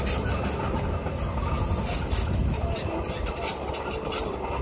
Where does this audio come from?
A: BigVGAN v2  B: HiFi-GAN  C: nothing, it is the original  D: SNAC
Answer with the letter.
C